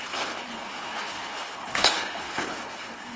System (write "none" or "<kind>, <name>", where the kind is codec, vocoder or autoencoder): codec, HILCodec